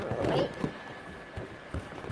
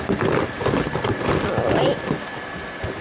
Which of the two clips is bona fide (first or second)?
first